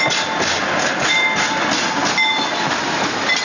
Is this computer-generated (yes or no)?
no